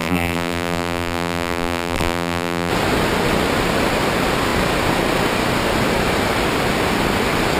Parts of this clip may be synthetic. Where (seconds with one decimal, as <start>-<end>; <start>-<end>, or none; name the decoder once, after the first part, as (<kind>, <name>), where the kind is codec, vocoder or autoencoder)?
0.0-2.7 (vocoder, BigVGAN v2)

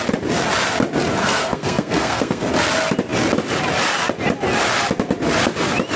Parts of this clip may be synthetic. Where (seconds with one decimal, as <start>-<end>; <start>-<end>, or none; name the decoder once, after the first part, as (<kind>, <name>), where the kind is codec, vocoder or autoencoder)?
1.2-2.5 (codec, SNAC)

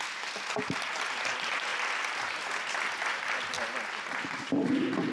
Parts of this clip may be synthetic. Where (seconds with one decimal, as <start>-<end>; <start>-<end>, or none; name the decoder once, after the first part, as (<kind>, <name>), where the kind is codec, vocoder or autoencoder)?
none

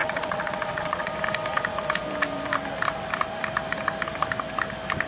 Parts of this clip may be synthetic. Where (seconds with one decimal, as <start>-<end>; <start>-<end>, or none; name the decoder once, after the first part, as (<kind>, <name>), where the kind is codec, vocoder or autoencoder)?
0.0-1.1 (vocoder, Vocos)

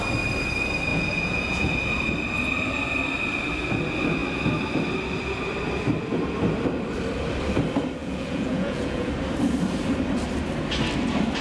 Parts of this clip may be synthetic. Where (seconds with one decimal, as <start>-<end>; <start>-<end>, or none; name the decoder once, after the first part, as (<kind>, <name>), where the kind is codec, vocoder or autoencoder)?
0.9-1.7 (vocoder, Vocos); 8.0-9.1

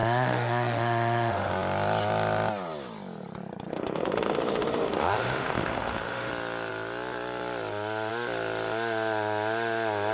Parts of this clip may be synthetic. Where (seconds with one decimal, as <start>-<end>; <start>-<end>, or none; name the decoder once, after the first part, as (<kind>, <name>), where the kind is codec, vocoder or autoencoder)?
0.0-1.5 (autoencoder, DAC-VAE); 3.7-6.3

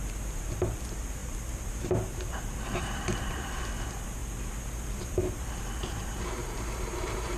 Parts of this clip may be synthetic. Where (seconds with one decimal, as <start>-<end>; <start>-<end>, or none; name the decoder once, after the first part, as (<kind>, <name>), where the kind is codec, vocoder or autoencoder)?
0.0-4.2 (vocoder, BigVGAN v2); 5.0-7.4

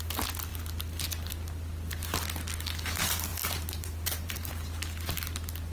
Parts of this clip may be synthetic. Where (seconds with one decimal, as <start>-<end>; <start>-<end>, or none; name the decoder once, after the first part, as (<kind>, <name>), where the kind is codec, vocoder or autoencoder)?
3.3-4.5 (vocoder, BigVGAN v2)